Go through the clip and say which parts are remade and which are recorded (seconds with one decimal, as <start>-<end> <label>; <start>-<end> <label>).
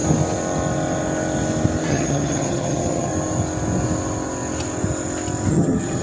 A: 0.0-1.9 recorded; 1.9-3.1 remade; 3.1-5.5 recorded; 5.5-6.0 remade